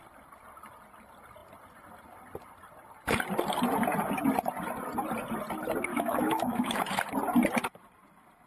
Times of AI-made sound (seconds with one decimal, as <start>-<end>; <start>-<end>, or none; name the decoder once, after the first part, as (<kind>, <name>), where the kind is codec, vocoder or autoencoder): 5.9-6.8 (autoencoder, DAC-VAE)